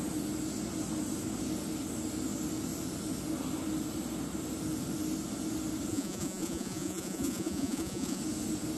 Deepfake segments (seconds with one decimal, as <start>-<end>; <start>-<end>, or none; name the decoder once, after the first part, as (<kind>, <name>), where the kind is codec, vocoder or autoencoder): 5.9-8.2 (vocoder, Vocos)